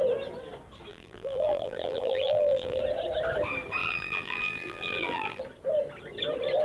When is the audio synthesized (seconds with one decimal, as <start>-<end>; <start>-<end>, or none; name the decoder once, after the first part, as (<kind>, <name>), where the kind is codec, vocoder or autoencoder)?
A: 0.9-2.8 (vocoder, BigVGAN v2); 3.8-5.4